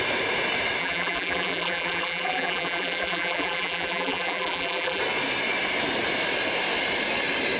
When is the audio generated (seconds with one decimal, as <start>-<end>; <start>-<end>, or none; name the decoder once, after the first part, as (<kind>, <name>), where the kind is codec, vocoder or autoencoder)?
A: 0.8-5.0 (vocoder, BigVGAN v2)